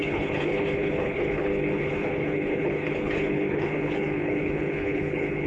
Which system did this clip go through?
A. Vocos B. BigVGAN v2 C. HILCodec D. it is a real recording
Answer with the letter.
C